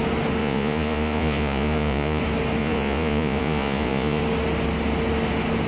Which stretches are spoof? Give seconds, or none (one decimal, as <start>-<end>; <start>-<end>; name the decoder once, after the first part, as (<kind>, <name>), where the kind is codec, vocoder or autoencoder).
0.4-2.2 (vocoder, Vocos); 2.6-4.2